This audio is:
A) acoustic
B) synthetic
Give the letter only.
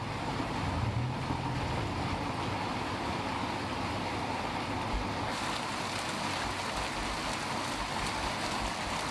A